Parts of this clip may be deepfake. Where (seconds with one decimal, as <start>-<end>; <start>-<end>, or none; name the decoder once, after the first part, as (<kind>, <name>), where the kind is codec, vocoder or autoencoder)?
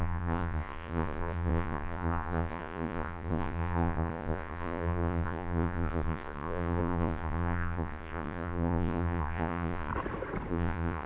0.0-9.9 (vocoder, Vocos); 10.5-11.1